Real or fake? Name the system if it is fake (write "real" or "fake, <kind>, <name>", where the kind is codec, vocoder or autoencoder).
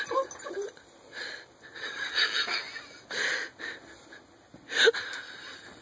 real